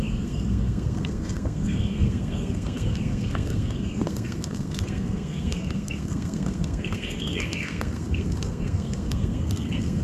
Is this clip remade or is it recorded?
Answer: remade